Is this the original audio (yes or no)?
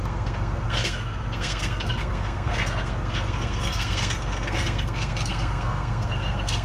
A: no